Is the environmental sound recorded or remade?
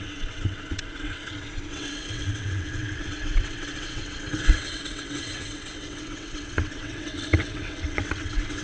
remade